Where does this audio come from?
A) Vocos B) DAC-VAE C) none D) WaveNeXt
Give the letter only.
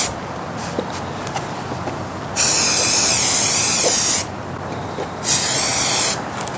C